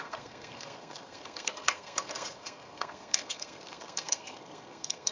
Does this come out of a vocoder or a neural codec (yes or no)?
yes